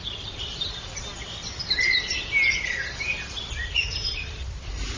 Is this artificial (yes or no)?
no